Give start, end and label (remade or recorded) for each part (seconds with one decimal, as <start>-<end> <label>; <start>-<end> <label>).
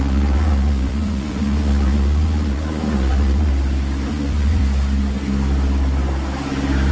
0.0-3.5 remade; 3.5-4.1 recorded; 4.1-4.6 remade; 4.6-6.9 recorded